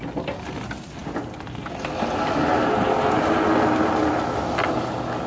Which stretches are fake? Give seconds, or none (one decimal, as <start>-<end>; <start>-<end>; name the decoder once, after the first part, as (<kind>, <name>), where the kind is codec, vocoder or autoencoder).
none